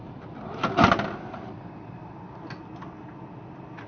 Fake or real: real